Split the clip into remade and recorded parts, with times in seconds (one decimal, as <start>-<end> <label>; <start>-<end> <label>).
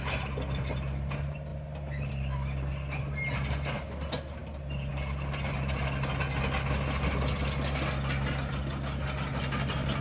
0.0-10.0 recorded